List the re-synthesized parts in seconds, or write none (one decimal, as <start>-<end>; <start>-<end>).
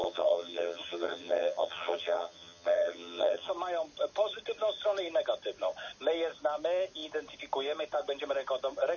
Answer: 0.0-3.5